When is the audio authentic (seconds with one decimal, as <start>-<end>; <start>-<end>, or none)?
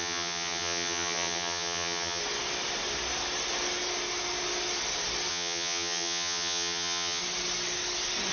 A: 2.2-5.3; 7.2-8.3